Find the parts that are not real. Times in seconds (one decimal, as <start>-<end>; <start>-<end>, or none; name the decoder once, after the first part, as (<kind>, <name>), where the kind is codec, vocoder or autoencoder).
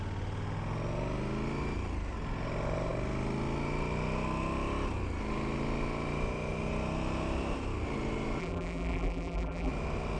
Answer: 8.4-9.7 (vocoder, BigVGAN v2)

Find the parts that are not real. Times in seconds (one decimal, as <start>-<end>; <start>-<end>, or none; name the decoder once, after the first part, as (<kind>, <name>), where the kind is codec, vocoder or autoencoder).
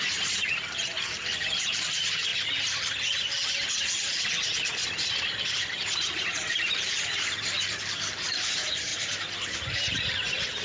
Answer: 0.0-2.3 (vocoder, BigVGAN v2); 6.3-10.6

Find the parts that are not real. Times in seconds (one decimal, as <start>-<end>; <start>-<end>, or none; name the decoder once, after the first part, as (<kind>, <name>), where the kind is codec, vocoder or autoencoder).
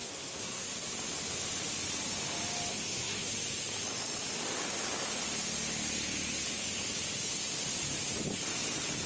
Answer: 0.0-0.7 (codec, SNAC); 2.7-3.3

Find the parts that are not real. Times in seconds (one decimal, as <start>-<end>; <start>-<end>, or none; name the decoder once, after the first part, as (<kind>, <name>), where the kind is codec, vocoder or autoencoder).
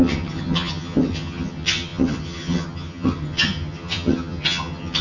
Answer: 0.0-5.0 (vocoder, HiFi-GAN)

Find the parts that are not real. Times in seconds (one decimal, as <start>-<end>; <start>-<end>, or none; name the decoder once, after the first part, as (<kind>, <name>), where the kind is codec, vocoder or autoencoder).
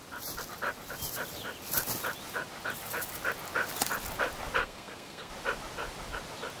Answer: 4.6-5.3 (codec, SNAC)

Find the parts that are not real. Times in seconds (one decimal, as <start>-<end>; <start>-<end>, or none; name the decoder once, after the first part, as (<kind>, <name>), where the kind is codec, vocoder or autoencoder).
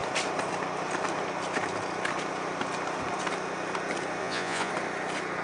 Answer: 4.2-4.7 (vocoder, Vocos)